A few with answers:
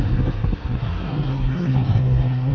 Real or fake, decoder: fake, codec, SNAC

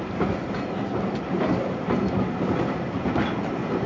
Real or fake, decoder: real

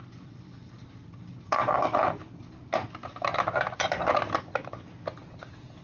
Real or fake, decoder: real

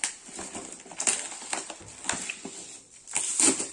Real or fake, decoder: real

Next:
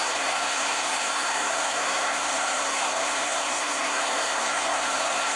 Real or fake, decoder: fake, codec, SNAC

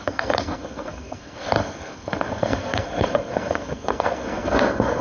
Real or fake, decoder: fake, codec, SNAC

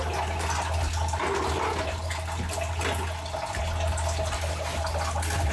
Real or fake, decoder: real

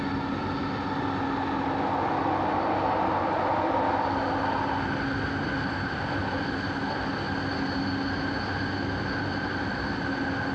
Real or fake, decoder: real